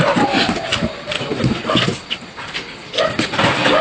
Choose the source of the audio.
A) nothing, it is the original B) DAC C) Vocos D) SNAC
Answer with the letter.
A